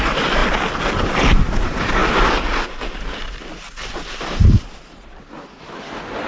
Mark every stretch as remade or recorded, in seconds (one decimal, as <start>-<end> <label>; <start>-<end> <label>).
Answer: 0.0-6.3 recorded